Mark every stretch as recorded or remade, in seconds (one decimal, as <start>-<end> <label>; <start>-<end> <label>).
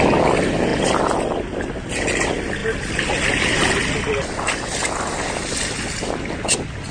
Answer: 0.0-6.9 recorded